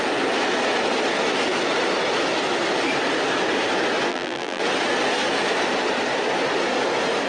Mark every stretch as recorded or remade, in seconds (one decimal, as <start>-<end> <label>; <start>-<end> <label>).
0.0-4.1 recorded; 4.1-4.6 remade; 4.6-7.3 recorded